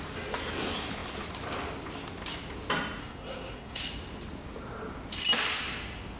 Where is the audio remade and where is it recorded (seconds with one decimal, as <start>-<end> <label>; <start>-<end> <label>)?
0.0-3.0 recorded; 3.0-3.8 remade; 3.8-6.2 recorded